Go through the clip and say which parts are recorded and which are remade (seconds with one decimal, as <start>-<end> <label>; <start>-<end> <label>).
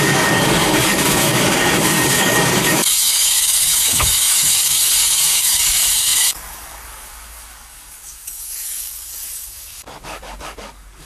0.0-11.1 remade